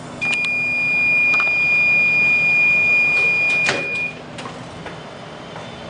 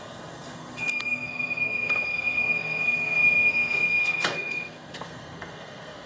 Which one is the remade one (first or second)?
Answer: second